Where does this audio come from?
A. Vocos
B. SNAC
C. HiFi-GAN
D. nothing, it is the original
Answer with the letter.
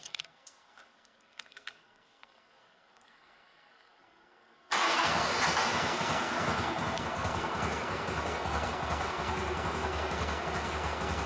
B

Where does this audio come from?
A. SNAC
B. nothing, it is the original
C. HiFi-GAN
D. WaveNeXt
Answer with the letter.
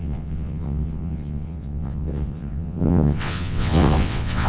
D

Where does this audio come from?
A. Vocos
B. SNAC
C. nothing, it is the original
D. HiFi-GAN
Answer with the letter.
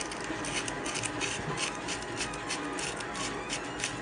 C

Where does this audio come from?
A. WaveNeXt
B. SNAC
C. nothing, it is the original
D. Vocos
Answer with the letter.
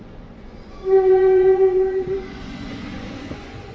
D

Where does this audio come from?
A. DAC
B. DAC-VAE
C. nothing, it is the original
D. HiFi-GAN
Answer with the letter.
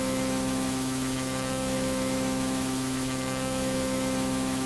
B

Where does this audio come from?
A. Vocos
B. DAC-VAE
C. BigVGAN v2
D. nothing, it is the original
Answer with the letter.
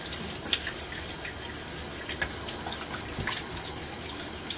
D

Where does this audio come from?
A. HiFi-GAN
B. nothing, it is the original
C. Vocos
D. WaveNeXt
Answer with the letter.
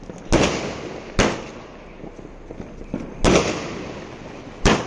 B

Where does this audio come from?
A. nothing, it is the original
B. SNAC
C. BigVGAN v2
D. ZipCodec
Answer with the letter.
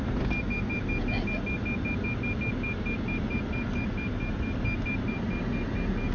A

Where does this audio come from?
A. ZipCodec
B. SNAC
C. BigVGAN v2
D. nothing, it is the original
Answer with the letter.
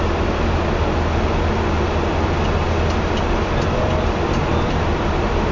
D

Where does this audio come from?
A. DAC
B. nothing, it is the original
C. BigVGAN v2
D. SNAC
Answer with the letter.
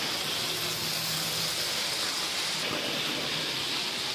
B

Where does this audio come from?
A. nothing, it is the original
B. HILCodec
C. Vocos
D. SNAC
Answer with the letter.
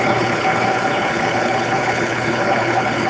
B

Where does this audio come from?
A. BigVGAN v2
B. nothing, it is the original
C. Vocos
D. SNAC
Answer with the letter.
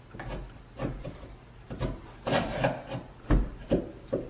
B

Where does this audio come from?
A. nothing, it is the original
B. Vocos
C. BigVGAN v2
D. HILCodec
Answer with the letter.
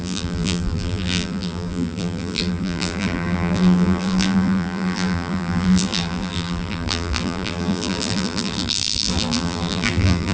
C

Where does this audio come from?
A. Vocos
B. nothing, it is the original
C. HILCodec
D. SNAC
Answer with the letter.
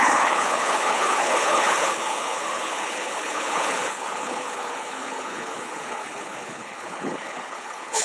C